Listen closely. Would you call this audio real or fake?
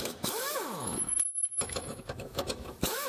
fake